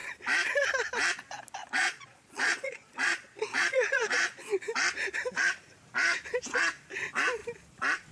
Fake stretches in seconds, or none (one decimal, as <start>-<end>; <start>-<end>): 1.6-4.5